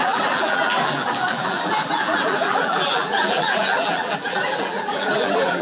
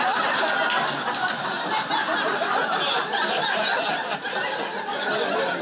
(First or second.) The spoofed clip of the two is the first